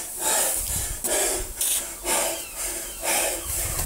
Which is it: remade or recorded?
recorded